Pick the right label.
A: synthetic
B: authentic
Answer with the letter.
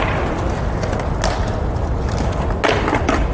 B